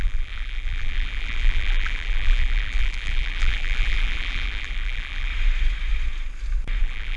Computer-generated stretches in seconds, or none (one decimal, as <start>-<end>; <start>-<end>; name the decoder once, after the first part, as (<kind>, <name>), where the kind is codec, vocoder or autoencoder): 0.0-5.3 (vocoder, BigVGAN v2); 6.8-7.2

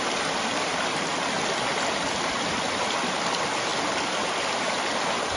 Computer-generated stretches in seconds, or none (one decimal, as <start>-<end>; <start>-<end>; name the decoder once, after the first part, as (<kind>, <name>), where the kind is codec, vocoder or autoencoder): 0.0-1.1 (vocoder, BigVGAN v2); 1.8-3.7

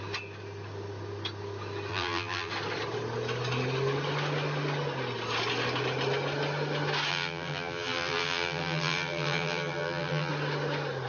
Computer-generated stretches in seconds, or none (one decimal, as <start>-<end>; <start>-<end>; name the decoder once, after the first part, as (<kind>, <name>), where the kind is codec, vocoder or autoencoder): 1.9-2.5 (vocoder, BigVGAN v2); 7.1-10.3

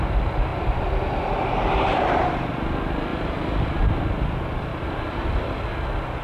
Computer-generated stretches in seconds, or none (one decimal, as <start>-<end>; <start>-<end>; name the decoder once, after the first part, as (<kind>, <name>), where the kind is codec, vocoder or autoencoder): 0.5-2.5 (vocoder, BigVGAN v2); 3.1-4.0; 4.7-5.5

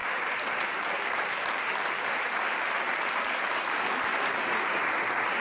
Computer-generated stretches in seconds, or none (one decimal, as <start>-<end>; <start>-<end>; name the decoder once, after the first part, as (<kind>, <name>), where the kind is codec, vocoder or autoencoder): 0.0-3.2 (vocoder, BigVGAN v2); 4.1-4.8

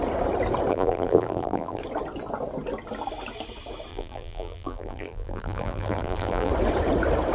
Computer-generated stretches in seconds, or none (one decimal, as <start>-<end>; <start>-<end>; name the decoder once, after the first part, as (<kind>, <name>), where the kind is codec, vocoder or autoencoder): 0.7-1.8 (vocoder, BigVGAN v2); 3.9-6.5

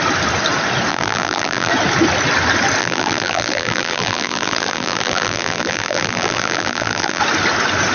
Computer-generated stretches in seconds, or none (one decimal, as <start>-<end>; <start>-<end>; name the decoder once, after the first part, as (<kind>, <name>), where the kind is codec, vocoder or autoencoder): 0.9-1.7 (vocoder, BigVGAN v2); 2.8-7.2